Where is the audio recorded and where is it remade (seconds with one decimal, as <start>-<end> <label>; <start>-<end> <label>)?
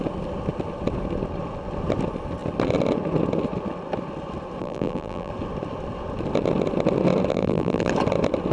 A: 0.0-4.6 recorded; 4.6-5.3 remade; 5.3-7.3 recorded; 7.3-7.9 remade; 7.9-8.5 recorded